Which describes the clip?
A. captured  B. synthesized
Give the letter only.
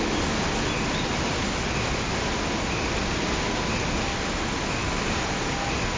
A